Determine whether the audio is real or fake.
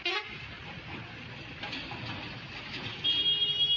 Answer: real